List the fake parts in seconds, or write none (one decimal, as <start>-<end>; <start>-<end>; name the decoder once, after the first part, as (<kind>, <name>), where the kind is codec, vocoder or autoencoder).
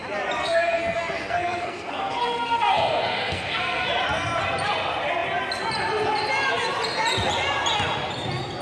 0.4-4.0 (codec, SNAC)